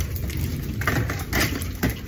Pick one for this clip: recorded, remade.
recorded